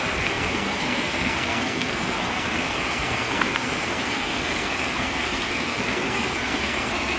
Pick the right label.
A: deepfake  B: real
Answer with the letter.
A